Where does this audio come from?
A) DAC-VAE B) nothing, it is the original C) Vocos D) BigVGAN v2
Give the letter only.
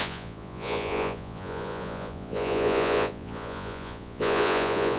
C